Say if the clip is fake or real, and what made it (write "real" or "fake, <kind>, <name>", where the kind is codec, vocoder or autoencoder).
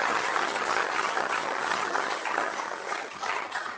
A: fake, vocoder, HiFi-GAN